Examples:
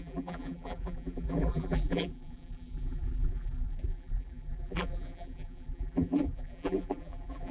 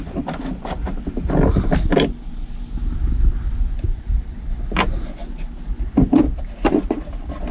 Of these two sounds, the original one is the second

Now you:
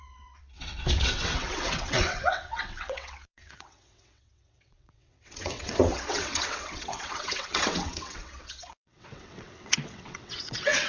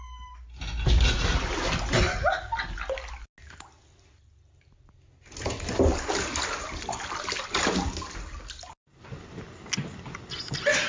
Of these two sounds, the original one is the second